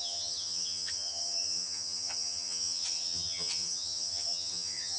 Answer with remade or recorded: remade